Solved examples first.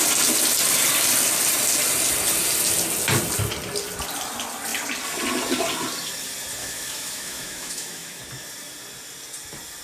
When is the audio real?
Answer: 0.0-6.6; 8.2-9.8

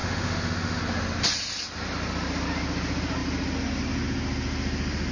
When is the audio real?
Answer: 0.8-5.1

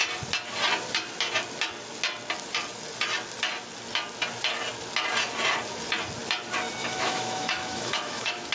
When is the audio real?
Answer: 0.0-6.8

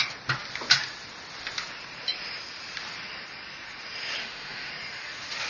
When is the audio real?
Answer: 0.0-4.2; 4.7-5.5

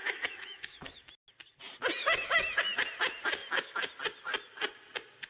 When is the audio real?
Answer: 1.1-2.0; 2.8-3.4; 3.9-5.3

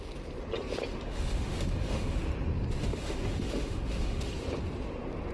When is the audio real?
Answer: 0.0-0.9; 2.2-2.8; 4.3-5.3